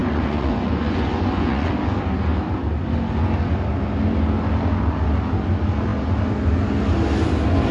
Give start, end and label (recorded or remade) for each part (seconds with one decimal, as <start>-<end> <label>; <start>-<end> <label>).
0.0-1.7 remade; 1.7-7.7 recorded